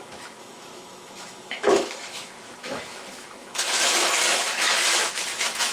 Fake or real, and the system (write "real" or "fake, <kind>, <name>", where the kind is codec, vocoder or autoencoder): fake, autoencoder, DAC-VAE